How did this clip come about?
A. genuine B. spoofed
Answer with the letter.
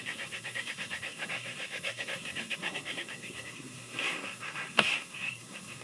B